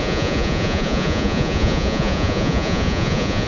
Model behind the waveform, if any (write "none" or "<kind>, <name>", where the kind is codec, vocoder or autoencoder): vocoder, Vocos